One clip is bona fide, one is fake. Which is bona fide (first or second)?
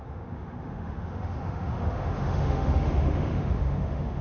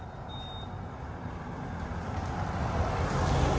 second